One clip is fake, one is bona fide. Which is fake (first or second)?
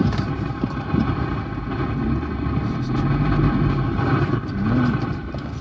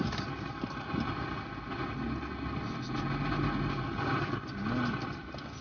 first